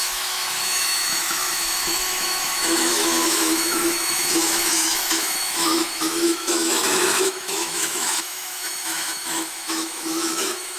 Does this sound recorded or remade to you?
remade